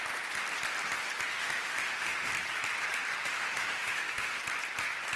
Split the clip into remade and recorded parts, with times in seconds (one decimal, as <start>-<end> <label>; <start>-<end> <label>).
0.0-1.3 recorded; 1.3-2.3 remade; 2.3-3.2 recorded; 3.2-4.4 remade; 4.4-5.2 recorded